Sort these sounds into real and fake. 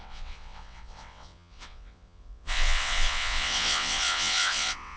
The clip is fake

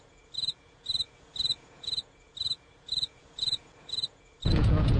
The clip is fake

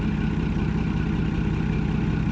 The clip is real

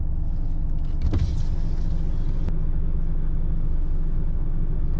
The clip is real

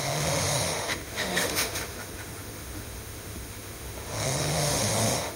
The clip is fake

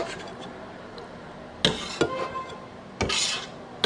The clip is real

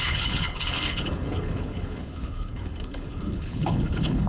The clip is fake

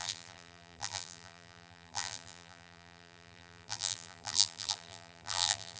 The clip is fake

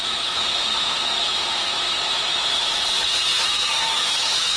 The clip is fake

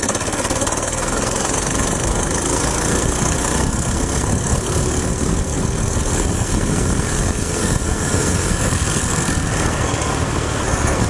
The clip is fake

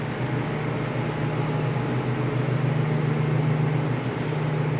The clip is real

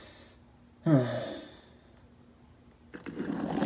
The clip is real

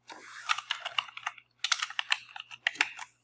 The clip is real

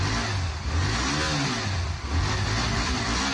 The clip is real